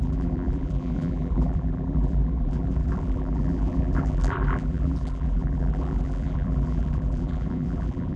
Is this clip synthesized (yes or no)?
yes